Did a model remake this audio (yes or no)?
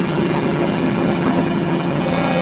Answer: yes